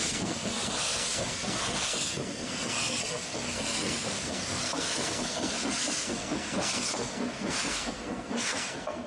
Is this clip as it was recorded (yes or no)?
no